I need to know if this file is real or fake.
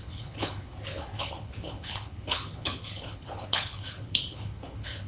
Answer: fake